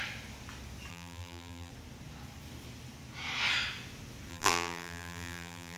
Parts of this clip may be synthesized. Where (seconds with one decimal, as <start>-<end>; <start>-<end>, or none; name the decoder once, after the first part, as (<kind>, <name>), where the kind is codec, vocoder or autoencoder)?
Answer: 0.9-1.7 (vocoder, BigVGAN v2); 4.3-5.8